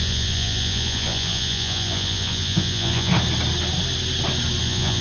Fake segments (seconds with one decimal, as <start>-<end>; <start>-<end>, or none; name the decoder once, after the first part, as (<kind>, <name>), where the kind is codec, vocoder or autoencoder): 0.0-3.1 (vocoder, Vocos); 4.6-5.0